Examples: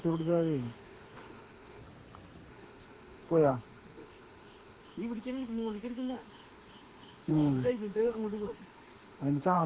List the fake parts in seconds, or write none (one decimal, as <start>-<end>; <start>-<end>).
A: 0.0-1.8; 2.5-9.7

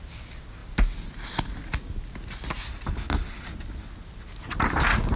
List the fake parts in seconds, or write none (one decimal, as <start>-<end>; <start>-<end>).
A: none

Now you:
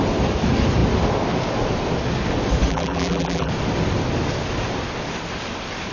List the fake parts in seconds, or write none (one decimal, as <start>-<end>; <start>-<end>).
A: 2.7-3.5

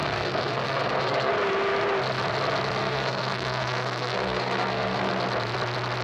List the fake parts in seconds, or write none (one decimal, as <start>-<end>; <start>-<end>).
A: 0.0-1.3; 2.8-5.1

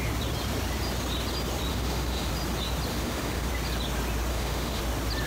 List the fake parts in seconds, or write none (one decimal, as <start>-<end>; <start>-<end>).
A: 1.7-2.3; 2.9-3.5; 4.3-4.8

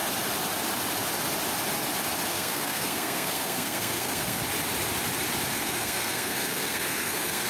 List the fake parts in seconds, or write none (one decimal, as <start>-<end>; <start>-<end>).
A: 2.3-4.4; 5.5-7.5

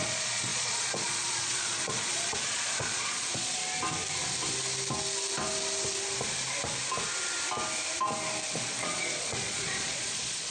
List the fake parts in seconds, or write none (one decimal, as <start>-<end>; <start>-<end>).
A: 0.0-3.6; 8.8-10.5